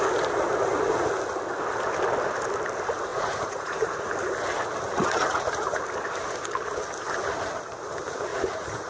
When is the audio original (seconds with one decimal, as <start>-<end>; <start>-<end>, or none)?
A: 0.0-3.1; 4.1-4.9; 5.8-8.3